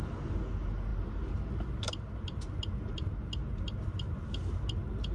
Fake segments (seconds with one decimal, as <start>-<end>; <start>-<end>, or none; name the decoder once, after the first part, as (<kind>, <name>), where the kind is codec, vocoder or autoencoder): none